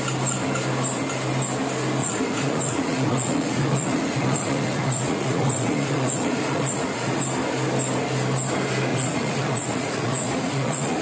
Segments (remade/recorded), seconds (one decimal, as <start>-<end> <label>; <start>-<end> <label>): 0.0-2.0 recorded; 2.0-7.2 remade; 7.2-8.9 recorded; 8.9-11.0 remade